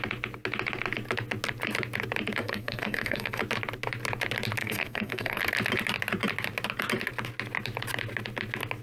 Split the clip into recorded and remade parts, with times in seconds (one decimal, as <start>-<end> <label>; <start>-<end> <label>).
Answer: 0.0-2.4 recorded; 2.4-3.4 remade; 3.4-4.6 recorded; 4.6-5.4 remade; 5.4-8.8 recorded